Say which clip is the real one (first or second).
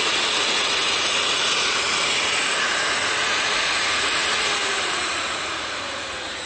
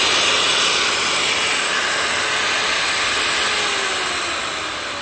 second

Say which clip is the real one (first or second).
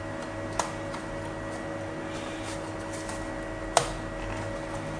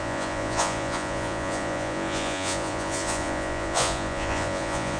first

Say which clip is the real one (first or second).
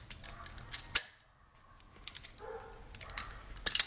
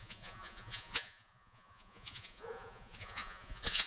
first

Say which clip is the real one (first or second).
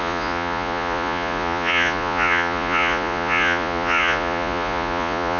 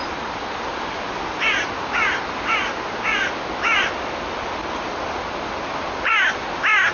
second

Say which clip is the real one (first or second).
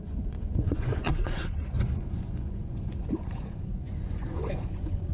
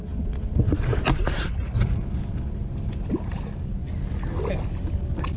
second